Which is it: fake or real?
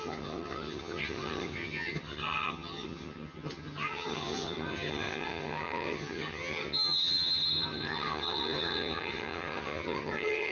fake